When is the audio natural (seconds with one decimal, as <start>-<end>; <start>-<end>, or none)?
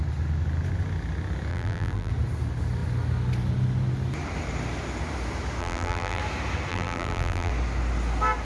0.0-1.5; 2.1-5.6; 6.2-6.7; 7.5-8.4